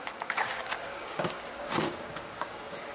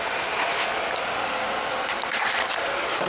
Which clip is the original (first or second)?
second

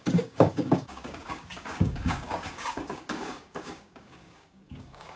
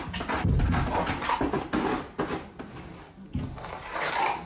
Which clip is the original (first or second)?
second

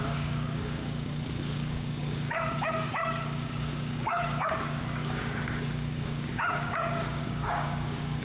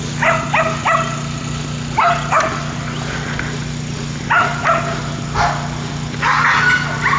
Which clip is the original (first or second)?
second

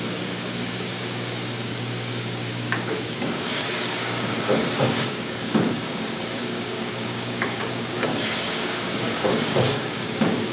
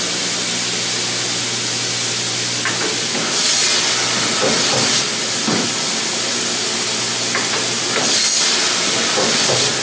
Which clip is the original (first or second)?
second